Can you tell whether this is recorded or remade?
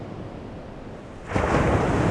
recorded